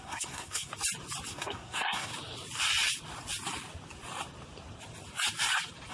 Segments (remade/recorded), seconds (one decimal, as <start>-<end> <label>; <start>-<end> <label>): 0.0-0.7 remade; 0.7-1.3 recorded; 1.3-2.1 remade; 2.1-5.9 recorded